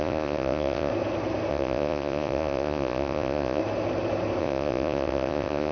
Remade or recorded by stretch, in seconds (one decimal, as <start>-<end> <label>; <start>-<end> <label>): 0.0-0.9 remade; 0.9-1.5 recorded; 1.5-3.6 remade; 3.6-4.4 recorded; 4.4-5.7 remade